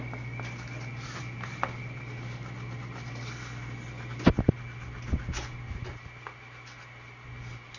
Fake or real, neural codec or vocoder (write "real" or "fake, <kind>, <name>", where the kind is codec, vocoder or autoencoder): real